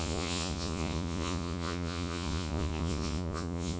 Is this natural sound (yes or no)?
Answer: no